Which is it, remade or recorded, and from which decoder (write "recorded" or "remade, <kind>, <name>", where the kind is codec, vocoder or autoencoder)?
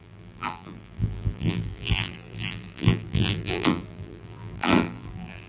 remade, vocoder, BigVGAN v2